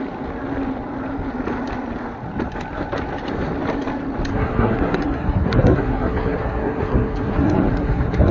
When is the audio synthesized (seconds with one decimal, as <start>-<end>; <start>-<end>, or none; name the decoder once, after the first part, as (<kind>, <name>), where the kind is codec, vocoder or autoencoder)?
4.3-8.3 (codec, SNAC)